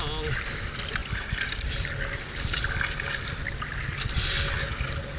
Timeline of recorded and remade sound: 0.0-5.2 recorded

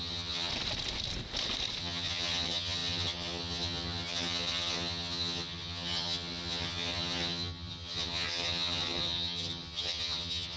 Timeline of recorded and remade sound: 0.0-0.5 remade; 0.5-1.8 recorded; 1.8-10.6 remade

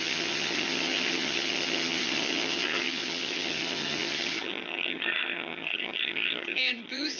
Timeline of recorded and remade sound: 0.0-7.2 remade